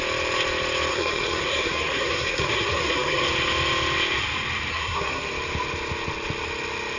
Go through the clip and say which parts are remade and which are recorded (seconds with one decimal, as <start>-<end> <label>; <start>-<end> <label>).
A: 0.0-0.9 recorded; 0.9-3.3 remade; 3.3-4.7 recorded; 4.7-5.3 remade; 5.3-7.0 recorded